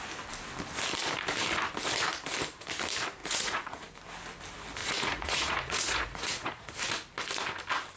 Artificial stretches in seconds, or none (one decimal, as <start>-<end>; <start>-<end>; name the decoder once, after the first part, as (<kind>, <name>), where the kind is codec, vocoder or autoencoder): 3.2-3.8 (vocoder, Vocos); 4.8-6.7